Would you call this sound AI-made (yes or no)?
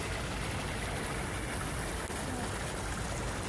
no